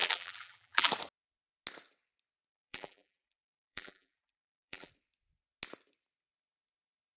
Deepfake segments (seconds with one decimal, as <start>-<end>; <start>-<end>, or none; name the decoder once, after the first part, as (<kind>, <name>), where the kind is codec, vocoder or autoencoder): 0.0-0.9 (vocoder, BigVGAN v2); 2.5-4.9